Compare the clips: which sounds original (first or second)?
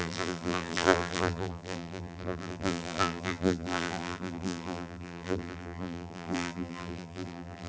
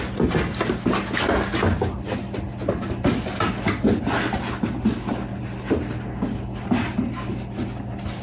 second